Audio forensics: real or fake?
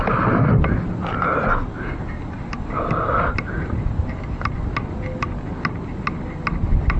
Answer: real